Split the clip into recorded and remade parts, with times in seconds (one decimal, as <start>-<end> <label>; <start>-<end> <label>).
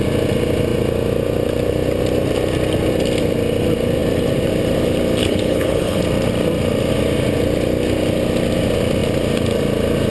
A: 0.0-5.2 recorded; 5.2-6.0 remade; 6.0-10.1 recorded